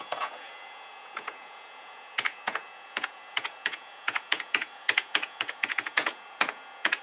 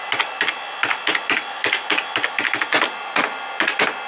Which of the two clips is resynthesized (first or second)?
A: first